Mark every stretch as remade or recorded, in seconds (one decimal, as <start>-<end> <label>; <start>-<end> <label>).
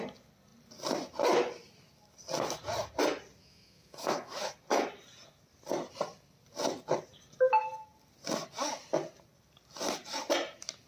0.0-3.4 recorded; 3.4-4.5 remade; 4.5-10.9 recorded